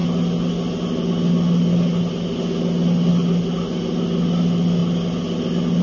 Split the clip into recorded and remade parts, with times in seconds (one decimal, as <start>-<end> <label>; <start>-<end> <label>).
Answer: 0.0-5.8 recorded